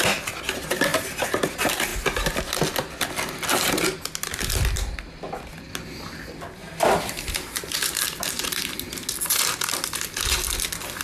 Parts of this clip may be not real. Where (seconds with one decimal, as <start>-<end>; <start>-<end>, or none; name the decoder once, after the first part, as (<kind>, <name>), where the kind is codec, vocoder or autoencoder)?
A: 0.9-1.5 (vocoder, BigVGAN v2); 6.6-8.7